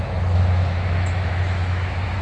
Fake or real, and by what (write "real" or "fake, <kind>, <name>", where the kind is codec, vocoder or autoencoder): fake, autoencoder, DAC-VAE